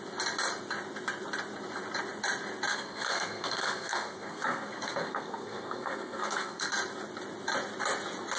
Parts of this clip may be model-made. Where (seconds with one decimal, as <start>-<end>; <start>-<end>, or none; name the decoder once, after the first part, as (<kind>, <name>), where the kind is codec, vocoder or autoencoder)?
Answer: 2.7-6.7 (codec, SNAC)